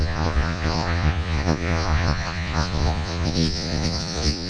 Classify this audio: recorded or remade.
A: remade